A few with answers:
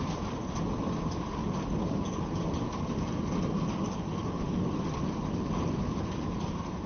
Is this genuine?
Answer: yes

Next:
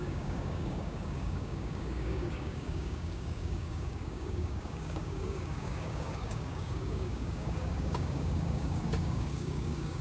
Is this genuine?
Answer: no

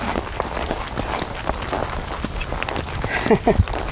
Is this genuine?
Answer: yes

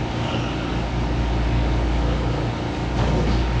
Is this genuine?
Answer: no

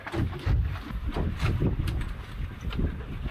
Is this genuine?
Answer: yes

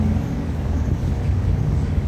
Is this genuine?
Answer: no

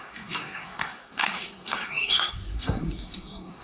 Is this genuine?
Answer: no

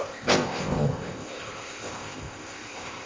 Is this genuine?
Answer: no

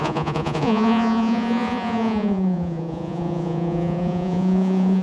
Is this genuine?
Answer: no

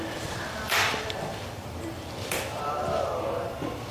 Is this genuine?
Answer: no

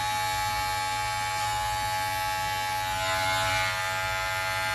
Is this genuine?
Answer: yes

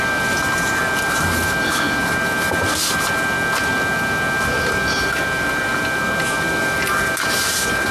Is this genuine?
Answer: yes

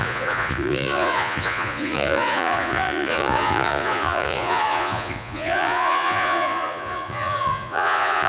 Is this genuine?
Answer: no